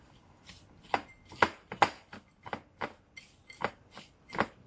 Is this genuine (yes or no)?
yes